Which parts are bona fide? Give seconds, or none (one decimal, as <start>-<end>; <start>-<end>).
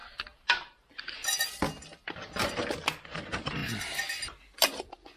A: 0.0-5.2